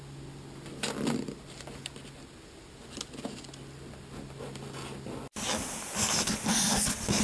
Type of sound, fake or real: real